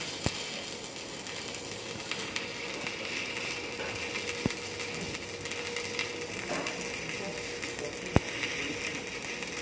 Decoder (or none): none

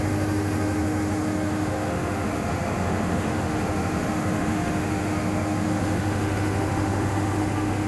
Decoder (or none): autoencoder, DAC-VAE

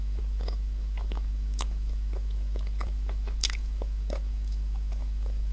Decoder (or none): autoencoder, DAC-VAE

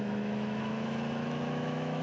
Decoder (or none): autoencoder, DAC-VAE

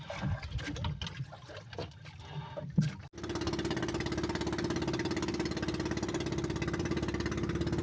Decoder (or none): none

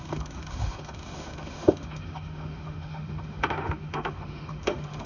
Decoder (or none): autoencoder, DAC-VAE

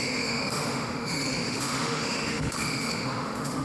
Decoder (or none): autoencoder, DAC-VAE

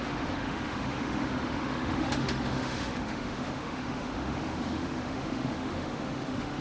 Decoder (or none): autoencoder, DAC-VAE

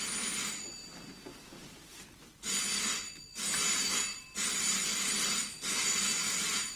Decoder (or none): none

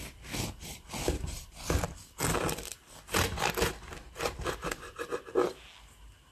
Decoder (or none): none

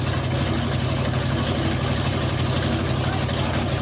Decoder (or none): none